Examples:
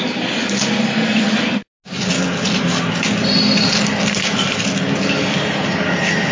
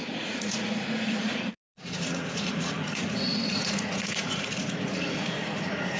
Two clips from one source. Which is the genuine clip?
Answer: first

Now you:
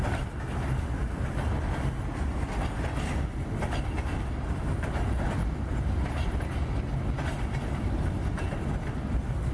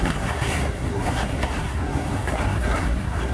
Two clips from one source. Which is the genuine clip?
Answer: first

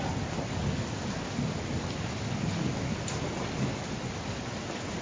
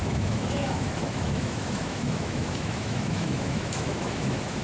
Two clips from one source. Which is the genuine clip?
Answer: first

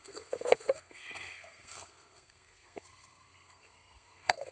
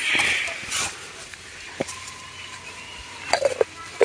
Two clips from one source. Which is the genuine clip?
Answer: second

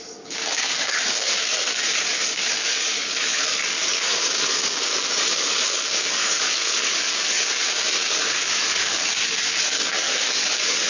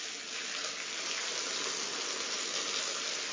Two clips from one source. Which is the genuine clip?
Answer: second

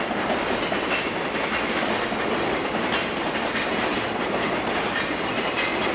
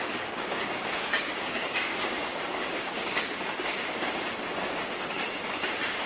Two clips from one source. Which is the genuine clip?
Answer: first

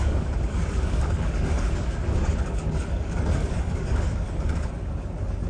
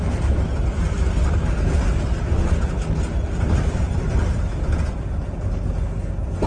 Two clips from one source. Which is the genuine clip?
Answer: second